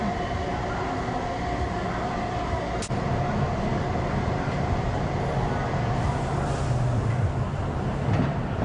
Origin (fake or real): real